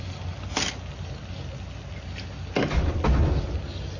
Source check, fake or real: real